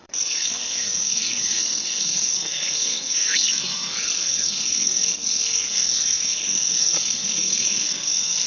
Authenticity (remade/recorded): remade